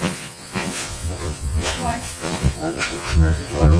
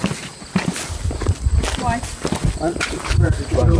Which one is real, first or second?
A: second